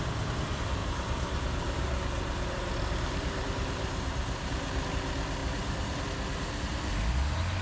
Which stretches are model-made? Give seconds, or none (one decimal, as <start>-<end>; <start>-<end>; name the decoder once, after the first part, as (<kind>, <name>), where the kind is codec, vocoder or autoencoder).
0.8-4.9 (vocoder, BigVGAN v2); 5.4-6.0

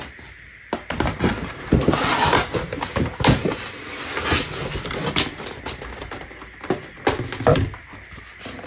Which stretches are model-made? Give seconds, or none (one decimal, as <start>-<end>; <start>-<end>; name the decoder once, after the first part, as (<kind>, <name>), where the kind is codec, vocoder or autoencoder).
none

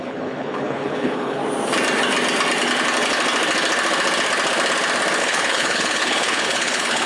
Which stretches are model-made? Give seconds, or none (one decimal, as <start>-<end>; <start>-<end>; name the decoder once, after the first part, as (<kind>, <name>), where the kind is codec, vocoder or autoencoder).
0.0-1.4 (codec, HILCodec); 5.2-7.1

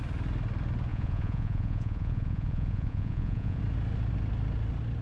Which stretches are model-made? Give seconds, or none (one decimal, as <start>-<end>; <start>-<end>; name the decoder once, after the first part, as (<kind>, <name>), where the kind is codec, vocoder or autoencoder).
0.9-3.6 (vocoder, Vocos)

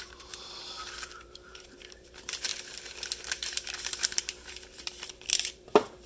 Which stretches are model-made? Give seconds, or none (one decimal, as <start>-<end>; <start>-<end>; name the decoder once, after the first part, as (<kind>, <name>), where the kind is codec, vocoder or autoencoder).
0.0-2.5 (vocoder, BigVGAN v2); 3.3-6.1

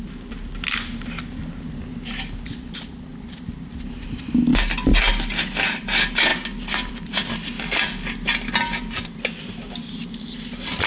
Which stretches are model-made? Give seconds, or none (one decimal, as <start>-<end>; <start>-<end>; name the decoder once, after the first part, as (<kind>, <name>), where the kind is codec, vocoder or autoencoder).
none